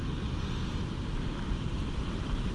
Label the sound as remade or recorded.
recorded